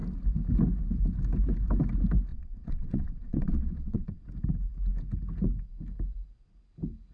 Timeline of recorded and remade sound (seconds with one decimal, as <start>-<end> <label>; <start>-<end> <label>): 0.0-2.3 recorded; 2.3-4.2 remade; 4.2-7.1 recorded